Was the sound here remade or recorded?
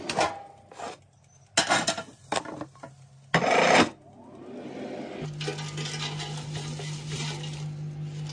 recorded